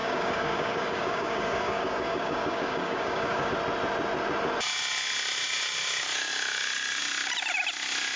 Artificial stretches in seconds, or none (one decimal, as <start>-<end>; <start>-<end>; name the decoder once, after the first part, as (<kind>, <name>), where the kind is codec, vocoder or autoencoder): 0.0-3.5 (codec, DAC)